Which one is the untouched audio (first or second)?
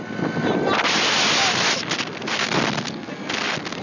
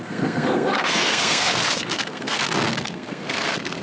first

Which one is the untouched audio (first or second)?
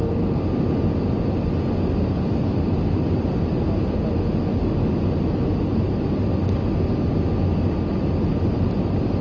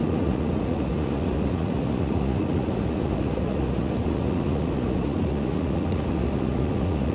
first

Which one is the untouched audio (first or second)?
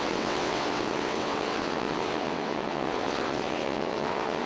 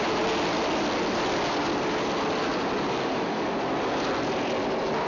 second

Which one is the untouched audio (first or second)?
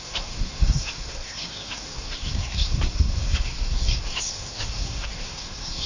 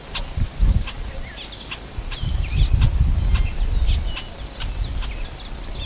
second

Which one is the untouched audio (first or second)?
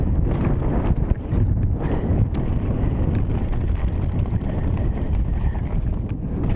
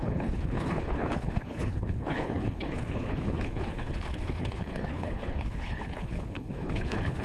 first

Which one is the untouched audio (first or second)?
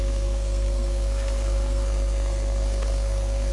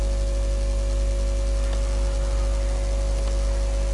second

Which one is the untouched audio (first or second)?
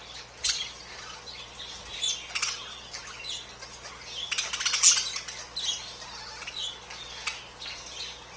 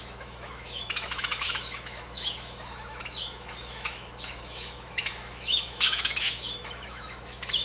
first